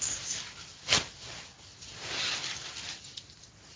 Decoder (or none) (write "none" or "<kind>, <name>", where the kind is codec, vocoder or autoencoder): none